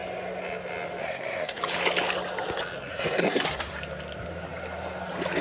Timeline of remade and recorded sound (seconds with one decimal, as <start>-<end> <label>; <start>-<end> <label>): 0.0-1.0 recorded; 1.0-1.6 remade; 1.6-2.9 recorded; 2.9-3.7 remade; 3.7-5.4 recorded

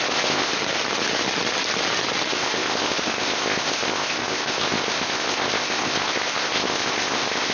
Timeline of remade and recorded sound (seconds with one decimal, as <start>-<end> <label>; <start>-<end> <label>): 0.0-0.5 remade; 0.5-2.3 recorded; 2.3-7.5 remade

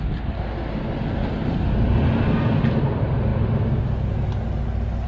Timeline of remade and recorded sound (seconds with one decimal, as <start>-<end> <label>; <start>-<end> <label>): 0.0-5.1 recorded

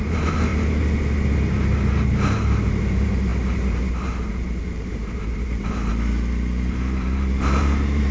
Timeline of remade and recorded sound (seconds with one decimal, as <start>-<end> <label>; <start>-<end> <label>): 0.0-0.5 remade; 0.5-2.7 recorded; 2.7-5.9 remade; 5.9-6.7 recorded; 6.7-8.1 remade